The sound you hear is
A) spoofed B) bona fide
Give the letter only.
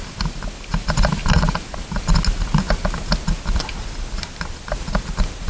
B